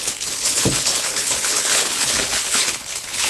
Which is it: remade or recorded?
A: remade